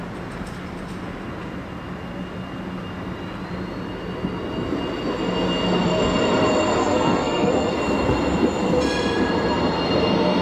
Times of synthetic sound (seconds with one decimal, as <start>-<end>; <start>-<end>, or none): 6.8-7.8